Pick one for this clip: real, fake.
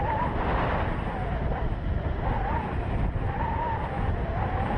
real